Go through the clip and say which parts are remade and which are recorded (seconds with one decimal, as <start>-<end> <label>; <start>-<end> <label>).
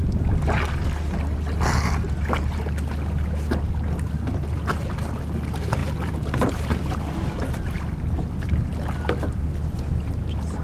0.0-10.6 recorded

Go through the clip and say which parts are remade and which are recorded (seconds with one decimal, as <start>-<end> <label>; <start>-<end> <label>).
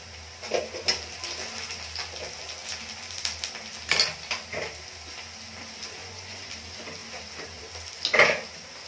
0.0-6.0 recorded; 6.0-6.5 remade; 6.5-8.9 recorded